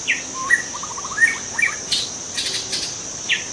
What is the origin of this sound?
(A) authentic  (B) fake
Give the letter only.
A